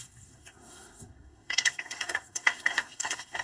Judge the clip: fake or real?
fake